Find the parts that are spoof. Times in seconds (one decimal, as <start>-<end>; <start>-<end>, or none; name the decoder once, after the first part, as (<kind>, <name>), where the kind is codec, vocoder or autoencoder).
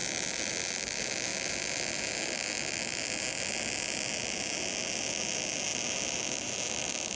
0.0-7.2 (vocoder, BigVGAN v2)